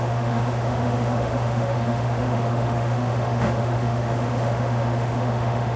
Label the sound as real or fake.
fake